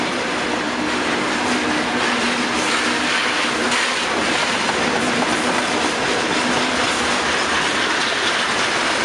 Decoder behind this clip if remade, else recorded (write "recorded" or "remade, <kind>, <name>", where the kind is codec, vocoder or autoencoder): recorded